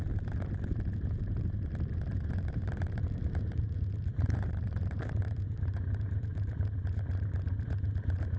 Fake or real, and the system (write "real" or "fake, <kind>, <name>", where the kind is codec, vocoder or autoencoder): fake, vocoder, BigVGAN v2